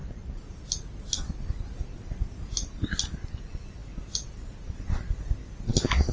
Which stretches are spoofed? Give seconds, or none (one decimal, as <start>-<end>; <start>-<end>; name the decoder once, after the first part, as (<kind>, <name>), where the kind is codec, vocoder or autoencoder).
none

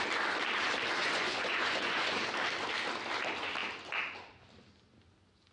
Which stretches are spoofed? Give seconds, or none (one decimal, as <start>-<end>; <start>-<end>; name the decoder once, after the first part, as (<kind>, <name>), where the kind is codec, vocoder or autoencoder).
1.0-2.3 (vocoder, Vocos)

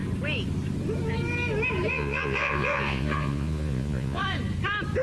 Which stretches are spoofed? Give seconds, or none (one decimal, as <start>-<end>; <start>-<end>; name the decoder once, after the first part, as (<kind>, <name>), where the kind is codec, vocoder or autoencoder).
1.9-4.2 (vocoder, Vocos)

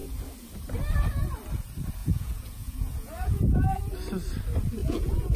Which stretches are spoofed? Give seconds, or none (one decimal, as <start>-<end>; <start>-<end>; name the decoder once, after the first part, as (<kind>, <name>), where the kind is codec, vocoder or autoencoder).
2.0-3.8 (vocoder, Vocos); 4.8-5.4

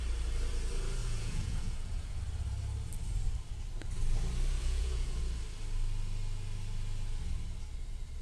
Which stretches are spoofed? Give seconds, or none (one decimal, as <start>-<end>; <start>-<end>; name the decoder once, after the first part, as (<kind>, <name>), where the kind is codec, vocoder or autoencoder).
1.0-2.2 (vocoder, Vocos); 4.6-5.2